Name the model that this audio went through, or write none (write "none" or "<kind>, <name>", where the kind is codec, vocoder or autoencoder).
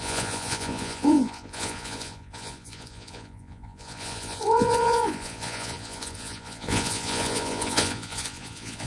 vocoder, Vocos